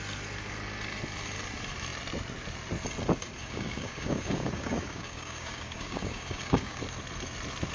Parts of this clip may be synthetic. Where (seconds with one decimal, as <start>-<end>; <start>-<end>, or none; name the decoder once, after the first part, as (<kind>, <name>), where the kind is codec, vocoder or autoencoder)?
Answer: 3.4-6.8 (codec, DAC)